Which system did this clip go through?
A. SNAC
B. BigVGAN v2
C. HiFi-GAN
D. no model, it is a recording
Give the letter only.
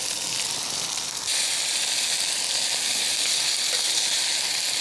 D